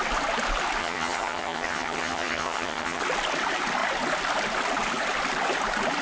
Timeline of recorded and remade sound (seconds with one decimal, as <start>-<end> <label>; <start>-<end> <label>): 0.0-0.8 recorded; 0.8-3.0 remade; 3.0-6.0 recorded